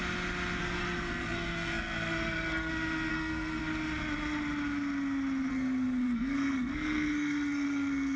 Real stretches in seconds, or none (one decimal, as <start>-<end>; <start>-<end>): 0.0-0.6; 2.7-3.1; 3.6-5.5